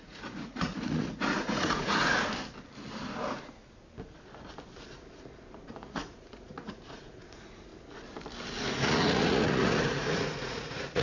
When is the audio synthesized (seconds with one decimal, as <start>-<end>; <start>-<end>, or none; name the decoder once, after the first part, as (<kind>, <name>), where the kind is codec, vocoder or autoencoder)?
0.0-2.1 (vocoder, Vocos); 5.7-7.7; 8.7-11.0